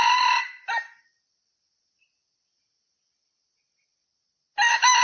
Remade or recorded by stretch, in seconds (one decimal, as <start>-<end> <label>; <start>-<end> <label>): 0.0-5.0 recorded